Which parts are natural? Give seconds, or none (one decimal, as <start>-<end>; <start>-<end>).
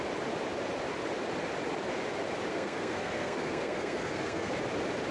0.0-2.5; 4.5-5.1